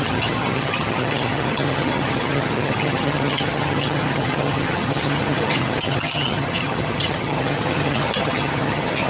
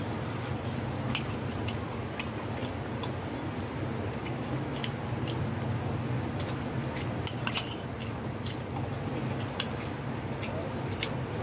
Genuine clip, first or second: second